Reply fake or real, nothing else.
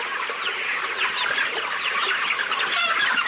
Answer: real